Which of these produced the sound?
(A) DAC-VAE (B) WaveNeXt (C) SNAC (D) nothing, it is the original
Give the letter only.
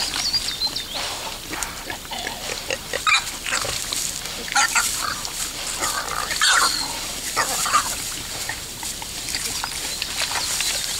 D